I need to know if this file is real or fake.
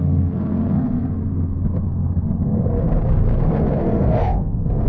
fake